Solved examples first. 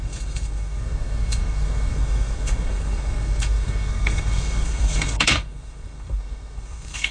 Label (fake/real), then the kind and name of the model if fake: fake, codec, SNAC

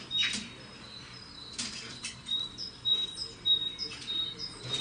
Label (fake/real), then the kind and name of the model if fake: fake, vocoder, BigVGAN v2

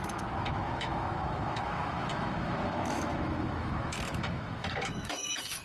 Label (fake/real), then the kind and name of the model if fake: fake, autoencoder, DAC-VAE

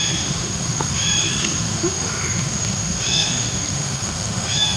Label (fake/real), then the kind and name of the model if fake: fake, autoencoder, DAC-VAE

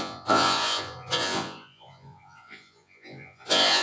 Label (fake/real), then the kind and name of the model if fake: fake, vocoder, Vocos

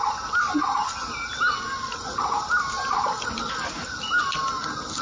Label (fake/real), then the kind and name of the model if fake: real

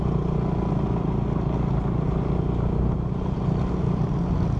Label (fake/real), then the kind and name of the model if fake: real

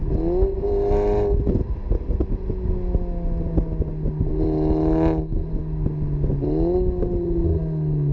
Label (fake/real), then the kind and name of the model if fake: real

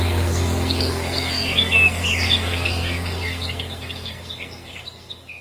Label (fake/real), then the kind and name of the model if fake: fake, codec, SNAC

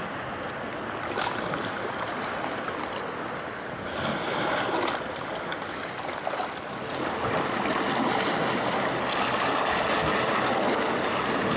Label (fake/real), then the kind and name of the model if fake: real